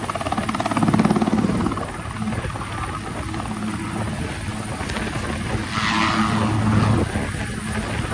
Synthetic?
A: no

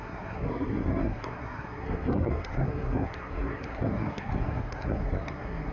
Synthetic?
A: yes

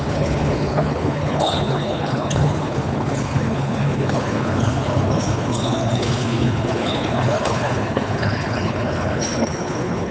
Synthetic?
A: yes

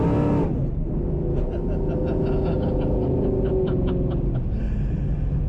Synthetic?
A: no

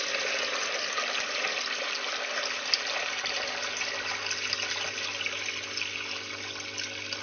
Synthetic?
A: no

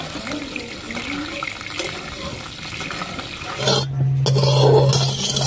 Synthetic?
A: no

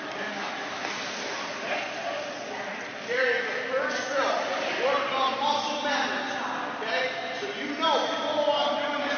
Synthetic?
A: no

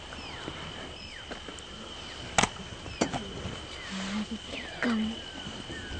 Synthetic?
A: no